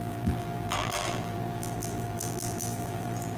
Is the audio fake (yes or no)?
yes